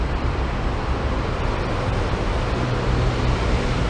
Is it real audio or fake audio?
real